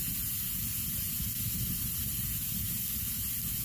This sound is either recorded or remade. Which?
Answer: recorded